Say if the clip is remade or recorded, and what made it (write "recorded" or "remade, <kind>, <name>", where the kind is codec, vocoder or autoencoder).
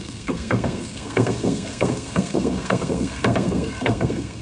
remade, codec, SNAC